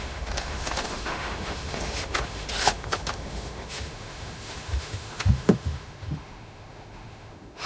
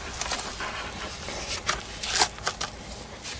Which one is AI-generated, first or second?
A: first